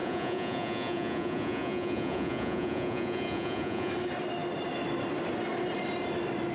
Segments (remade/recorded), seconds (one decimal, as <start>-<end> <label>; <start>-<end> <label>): 0.0-3.9 remade; 3.9-6.5 recorded

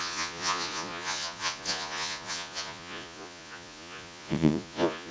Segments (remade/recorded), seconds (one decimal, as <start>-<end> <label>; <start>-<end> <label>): 0.0-5.1 remade

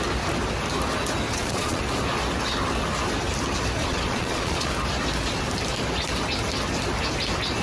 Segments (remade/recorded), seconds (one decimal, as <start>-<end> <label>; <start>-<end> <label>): 0.0-1.3 recorded; 1.3-1.8 remade; 1.8-3.8 recorded; 3.8-4.7 remade; 4.7-7.6 recorded